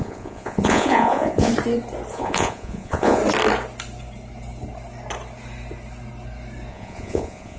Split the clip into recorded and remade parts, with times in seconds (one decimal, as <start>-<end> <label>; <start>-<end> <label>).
0.0-1.5 remade; 1.5-2.1 recorded; 2.1-3.2 remade; 3.2-6.7 recorded; 6.7-7.6 remade